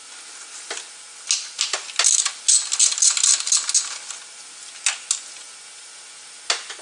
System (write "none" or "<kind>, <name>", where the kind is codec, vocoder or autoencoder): none